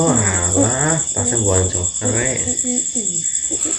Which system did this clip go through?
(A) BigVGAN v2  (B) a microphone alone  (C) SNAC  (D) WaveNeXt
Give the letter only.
B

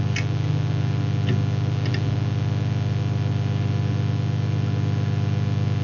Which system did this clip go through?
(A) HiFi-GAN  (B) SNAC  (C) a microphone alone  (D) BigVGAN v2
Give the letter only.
C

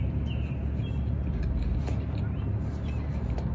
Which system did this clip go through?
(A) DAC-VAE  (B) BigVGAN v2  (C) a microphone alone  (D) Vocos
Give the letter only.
C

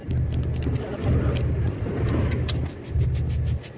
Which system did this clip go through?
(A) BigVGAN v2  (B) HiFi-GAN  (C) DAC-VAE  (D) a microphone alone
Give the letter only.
D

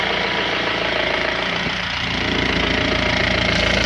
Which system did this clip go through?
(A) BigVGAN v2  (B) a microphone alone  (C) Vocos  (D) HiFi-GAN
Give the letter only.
A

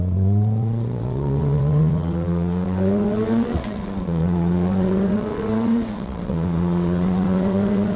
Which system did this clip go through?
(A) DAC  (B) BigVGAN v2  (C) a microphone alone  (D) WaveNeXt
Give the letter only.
D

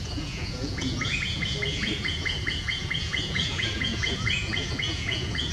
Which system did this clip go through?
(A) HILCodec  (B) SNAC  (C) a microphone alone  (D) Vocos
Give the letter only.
D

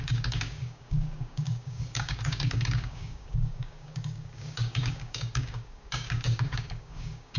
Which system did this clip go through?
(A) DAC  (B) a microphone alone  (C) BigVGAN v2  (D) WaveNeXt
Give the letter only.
A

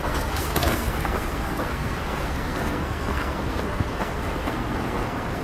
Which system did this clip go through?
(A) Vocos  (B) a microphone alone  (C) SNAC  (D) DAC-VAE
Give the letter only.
C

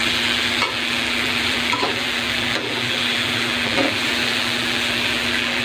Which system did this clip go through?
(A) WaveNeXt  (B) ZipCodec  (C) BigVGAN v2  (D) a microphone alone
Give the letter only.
C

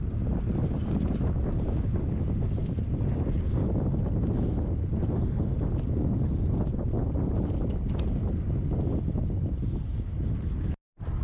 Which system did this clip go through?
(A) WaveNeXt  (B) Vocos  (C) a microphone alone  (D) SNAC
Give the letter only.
C